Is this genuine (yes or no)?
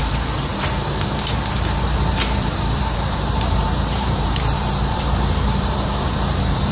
no